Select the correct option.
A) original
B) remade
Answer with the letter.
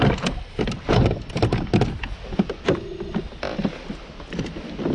A